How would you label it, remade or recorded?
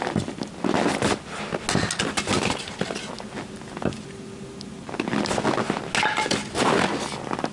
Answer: recorded